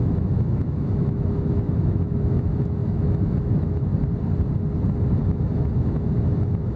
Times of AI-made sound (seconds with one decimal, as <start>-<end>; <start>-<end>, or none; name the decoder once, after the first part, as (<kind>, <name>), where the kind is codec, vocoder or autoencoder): 0.0-3.9 (autoencoder, DAC-VAE); 5.3-6.8